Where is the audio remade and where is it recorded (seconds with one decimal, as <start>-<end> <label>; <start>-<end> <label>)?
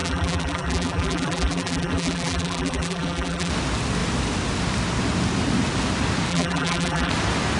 0.0-3.5 remade; 3.5-6.3 recorded; 6.3-7.1 remade; 7.1-7.6 recorded